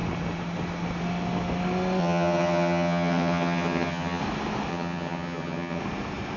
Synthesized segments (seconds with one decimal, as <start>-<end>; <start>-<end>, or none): 2.0-4.2; 4.7-5.8